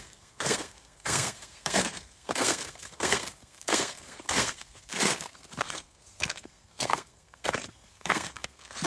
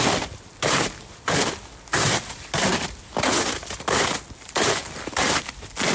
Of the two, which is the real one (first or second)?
second